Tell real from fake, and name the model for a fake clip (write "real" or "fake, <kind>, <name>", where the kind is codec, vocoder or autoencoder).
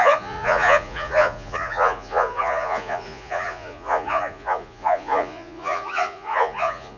fake, vocoder, Vocos